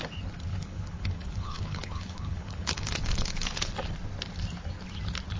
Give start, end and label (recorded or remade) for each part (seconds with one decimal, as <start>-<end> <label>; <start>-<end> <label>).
0.0-0.5 recorded; 0.5-3.7 remade; 3.7-5.4 recorded